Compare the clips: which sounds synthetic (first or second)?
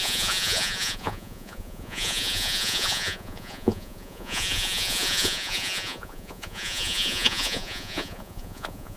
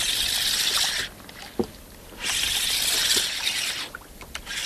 first